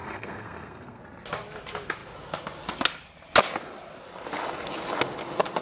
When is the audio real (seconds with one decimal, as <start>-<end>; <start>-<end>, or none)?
1.0-5.6